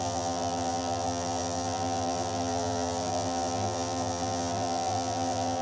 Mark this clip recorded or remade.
remade